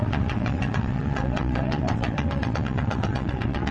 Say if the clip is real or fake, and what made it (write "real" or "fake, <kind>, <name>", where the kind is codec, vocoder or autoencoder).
fake, vocoder, WaveNeXt